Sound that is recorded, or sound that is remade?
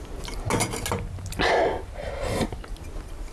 recorded